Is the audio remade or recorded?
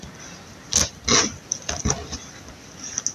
recorded